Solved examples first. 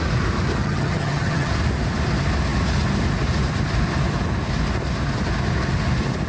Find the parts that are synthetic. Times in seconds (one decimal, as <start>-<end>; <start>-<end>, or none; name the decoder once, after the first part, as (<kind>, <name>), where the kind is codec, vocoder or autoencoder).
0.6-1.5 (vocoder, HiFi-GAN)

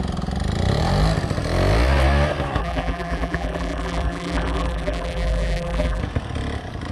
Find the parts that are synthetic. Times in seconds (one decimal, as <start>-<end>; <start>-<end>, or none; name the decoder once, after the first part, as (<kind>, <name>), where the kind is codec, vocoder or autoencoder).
2.6-6.0 (vocoder, BigVGAN v2)

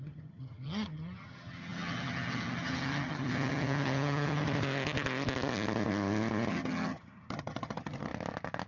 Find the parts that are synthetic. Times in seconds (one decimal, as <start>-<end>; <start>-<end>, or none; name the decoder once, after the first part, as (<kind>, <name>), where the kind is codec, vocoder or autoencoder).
0.0-4.4 (vocoder, HiFi-GAN); 6.5-8.1